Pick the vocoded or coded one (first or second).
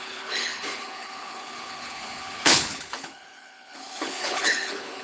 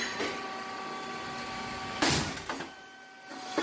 first